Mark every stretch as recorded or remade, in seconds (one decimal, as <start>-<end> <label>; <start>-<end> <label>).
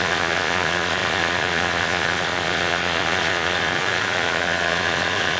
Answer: 0.0-5.4 remade